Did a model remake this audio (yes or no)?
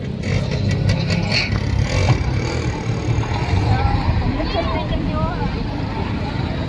no